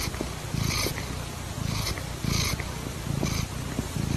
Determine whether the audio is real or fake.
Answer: real